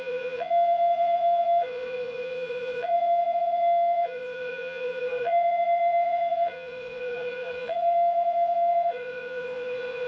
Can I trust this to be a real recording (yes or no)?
no